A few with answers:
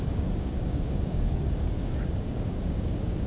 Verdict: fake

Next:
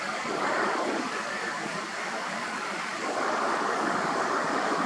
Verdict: fake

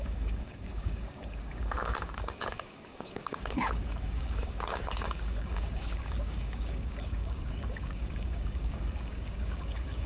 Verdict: fake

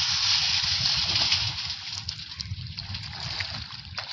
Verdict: real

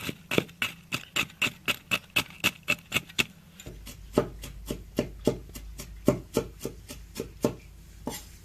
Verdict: real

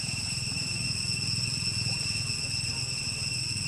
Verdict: real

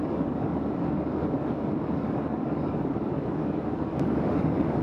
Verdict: fake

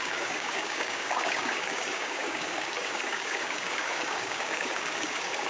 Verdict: fake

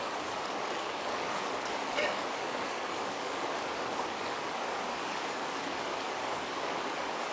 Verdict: fake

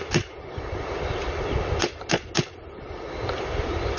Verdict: real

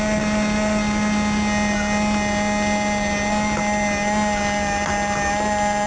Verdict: real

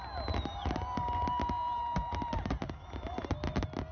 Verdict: real